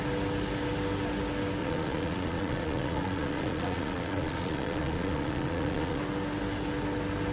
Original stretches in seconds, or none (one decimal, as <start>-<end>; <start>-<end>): 0.0-1.6; 6.0-7.3